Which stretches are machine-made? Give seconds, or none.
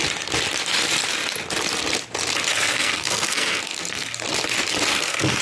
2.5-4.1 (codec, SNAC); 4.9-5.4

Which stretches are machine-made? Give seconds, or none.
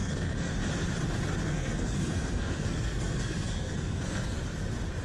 0.0-0.5 (codec, SNAC); 1.4-4.4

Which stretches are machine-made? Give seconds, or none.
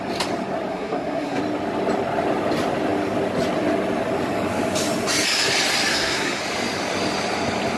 0.7-1.4 (codec, SNAC); 5.9-6.4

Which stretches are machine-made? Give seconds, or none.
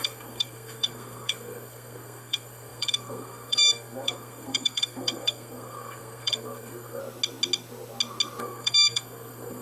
0.0-7.0 (codec, SNAC); 8.4-9.6